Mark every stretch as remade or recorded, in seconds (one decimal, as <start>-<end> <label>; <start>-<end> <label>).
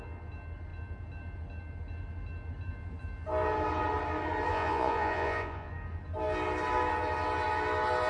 0.0-4.5 recorded; 4.5-5.7 remade; 5.7-8.1 recorded